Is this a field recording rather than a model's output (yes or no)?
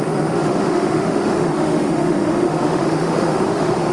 no